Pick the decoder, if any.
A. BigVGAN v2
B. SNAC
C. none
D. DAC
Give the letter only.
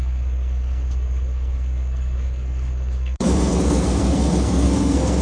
B